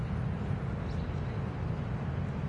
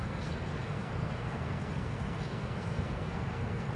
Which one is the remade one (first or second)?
second